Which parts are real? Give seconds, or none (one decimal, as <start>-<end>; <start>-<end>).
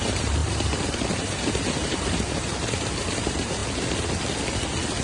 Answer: 3.6-5.0